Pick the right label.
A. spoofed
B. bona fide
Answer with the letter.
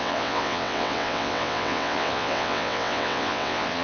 A